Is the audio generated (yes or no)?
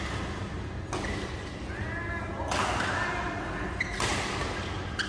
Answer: no